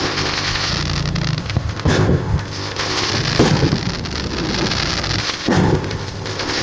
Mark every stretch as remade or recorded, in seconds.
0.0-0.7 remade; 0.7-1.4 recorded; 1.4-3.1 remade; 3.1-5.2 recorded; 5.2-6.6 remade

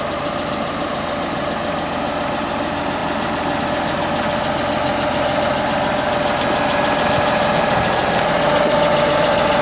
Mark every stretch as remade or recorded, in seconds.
0.0-9.6 recorded

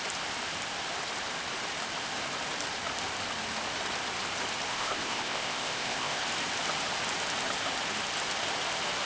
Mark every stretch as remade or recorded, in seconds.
0.0-4.7 recorded; 4.7-6.2 remade; 6.2-9.1 recorded

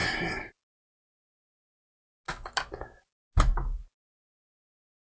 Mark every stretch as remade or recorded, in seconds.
0.0-5.0 recorded

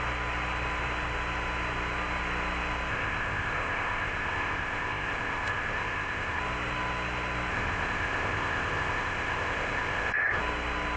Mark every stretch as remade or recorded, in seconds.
0.0-2.9 recorded; 2.9-6.4 remade; 6.4-7.5 recorded; 7.5-10.4 remade; 10.4-11.0 recorded

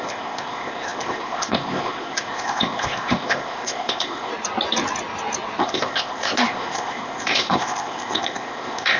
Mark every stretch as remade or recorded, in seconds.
0.0-4.3 remade; 4.3-5.6 recorded; 5.6-9.0 remade